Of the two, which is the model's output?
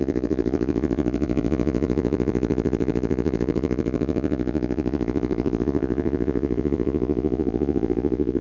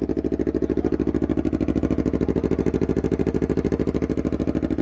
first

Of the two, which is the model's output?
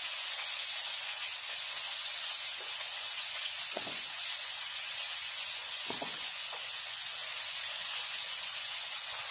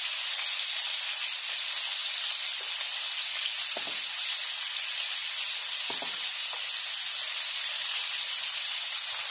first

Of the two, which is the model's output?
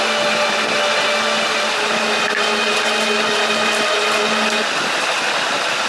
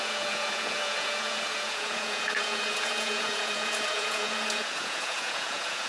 second